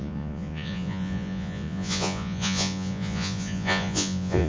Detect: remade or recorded remade